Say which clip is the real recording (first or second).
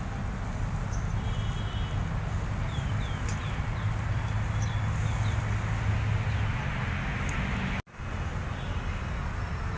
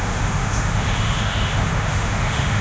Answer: first